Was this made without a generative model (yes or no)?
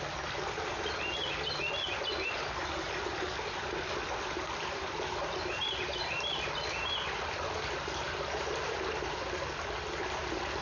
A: yes